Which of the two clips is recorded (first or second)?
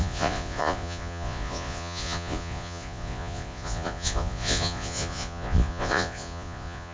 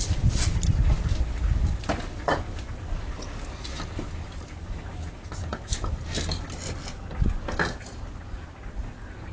second